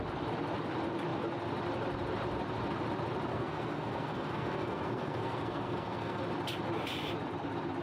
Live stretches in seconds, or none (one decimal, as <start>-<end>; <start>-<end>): 0.0-3.3; 6.2-7.8